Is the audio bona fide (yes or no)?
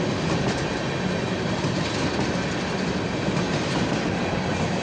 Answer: yes